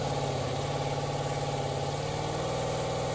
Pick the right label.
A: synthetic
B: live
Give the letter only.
B